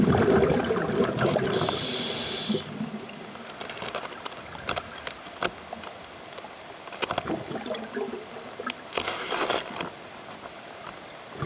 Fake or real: real